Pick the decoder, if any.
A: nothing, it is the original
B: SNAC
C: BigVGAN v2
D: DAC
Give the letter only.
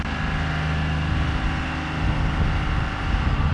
A